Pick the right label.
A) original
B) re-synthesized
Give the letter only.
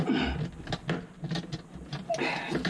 A